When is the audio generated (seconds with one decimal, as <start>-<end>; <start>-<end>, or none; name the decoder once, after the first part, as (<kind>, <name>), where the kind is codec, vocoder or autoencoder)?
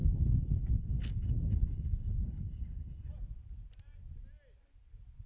0.0-3.1 (codec, HILCodec)